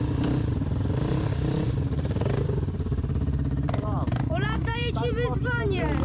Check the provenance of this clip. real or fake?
fake